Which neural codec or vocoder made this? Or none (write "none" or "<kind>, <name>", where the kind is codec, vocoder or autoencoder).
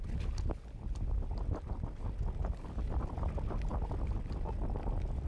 none